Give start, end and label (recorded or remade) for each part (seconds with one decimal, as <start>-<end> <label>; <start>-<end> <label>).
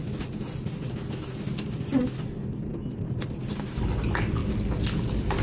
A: 0.0-5.4 recorded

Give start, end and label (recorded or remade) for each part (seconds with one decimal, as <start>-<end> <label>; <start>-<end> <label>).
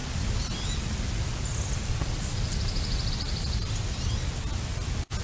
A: 0.0-5.2 recorded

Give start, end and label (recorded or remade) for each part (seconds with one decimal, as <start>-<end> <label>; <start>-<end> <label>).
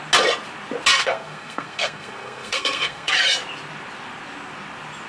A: 0.0-1.0 recorded; 1.0-3.1 remade; 3.1-5.1 recorded